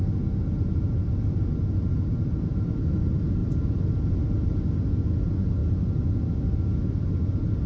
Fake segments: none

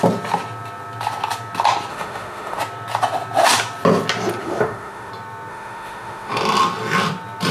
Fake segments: 1.9-2.6 (autoencoder, DAC-VAE); 4.4-5.1; 5.5-6.4

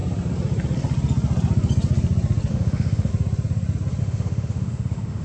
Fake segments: 2.5-3.1 (autoencoder, DAC-VAE); 4.0-5.2

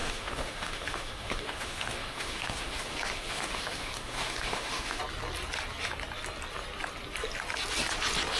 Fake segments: 0.0-5.0 (autoencoder, DAC-VAE)